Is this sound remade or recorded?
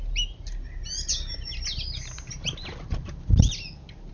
recorded